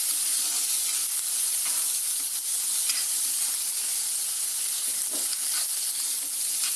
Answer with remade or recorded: recorded